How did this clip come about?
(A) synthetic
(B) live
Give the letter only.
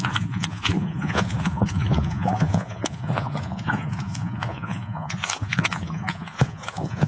A